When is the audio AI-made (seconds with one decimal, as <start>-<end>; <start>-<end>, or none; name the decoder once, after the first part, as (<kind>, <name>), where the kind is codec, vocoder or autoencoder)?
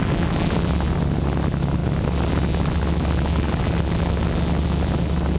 none